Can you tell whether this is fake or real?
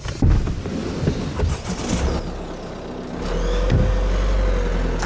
real